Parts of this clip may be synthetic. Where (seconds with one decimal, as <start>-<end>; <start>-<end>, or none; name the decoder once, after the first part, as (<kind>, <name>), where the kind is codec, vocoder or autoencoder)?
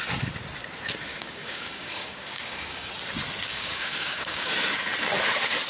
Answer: 1.1-2.9 (codec, DAC); 3.5-4.5